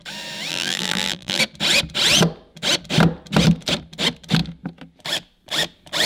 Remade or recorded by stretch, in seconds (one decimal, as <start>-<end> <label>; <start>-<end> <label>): 0.0-0.5 recorded; 0.5-1.4 remade; 1.4-6.1 recorded